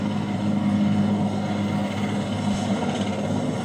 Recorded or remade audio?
recorded